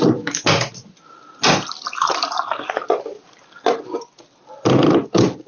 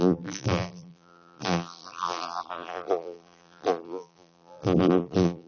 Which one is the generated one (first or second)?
second